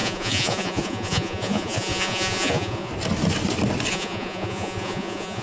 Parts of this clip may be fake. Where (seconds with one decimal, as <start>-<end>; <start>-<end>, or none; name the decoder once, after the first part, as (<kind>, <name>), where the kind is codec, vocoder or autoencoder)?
0.0-2.9 (vocoder, Vocos); 3.9-5.4